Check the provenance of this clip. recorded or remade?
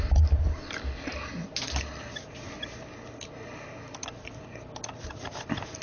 recorded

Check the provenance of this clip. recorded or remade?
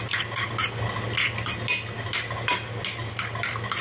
recorded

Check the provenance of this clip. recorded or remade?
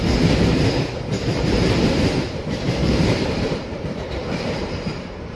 remade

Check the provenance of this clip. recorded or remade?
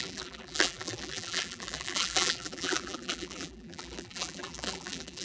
remade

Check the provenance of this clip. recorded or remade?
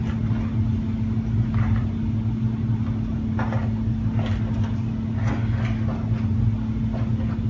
recorded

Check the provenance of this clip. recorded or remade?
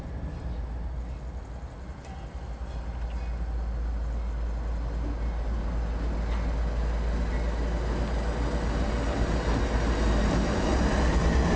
recorded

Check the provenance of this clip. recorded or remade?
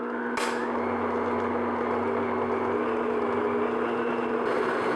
recorded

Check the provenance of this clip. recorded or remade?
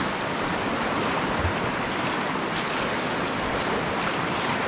recorded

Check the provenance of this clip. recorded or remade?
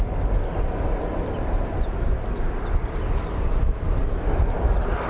recorded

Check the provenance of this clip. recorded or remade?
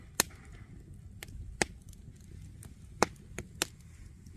recorded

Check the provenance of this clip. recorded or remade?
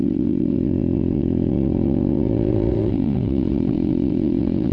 remade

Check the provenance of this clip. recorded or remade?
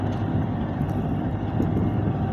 recorded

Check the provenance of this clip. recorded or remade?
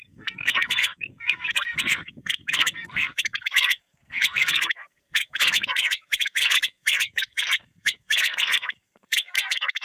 remade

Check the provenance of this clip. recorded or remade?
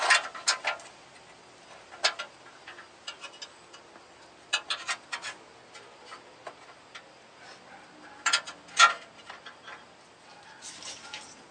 recorded